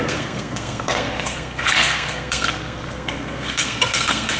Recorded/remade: remade